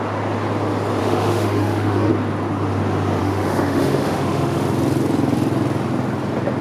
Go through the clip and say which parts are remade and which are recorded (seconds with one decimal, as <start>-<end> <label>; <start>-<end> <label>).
0.0-1.0 recorded; 1.0-2.1 remade; 2.1-3.2 recorded; 3.2-4.6 remade; 4.6-6.6 recorded